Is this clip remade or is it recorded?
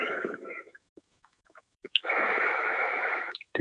remade